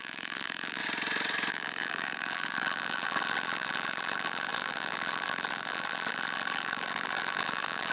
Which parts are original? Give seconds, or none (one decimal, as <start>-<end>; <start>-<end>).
0.8-1.5